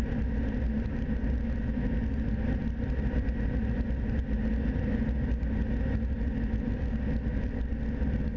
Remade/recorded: recorded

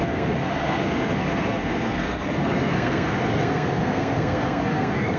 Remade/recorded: remade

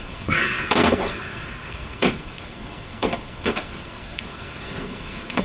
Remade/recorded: remade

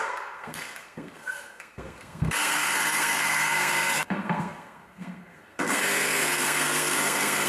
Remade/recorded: remade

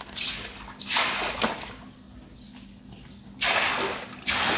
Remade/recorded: recorded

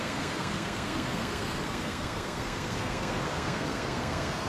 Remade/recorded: remade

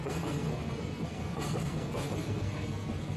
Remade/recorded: remade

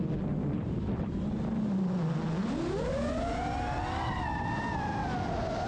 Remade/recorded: recorded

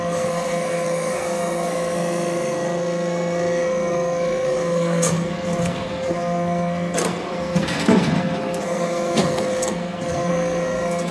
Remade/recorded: remade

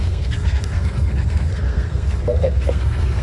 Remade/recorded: remade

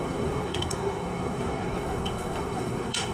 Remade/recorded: remade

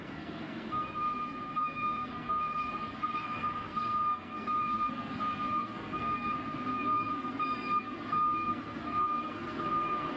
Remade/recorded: remade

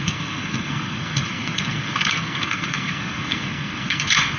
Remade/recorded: remade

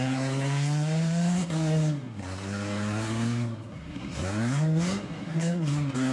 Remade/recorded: remade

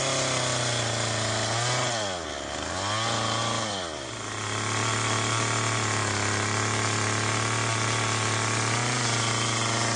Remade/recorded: recorded